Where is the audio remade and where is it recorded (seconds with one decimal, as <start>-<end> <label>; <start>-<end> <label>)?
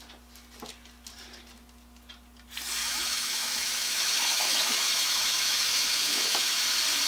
0.0-2.8 recorded; 2.8-6.6 remade; 6.6-7.1 recorded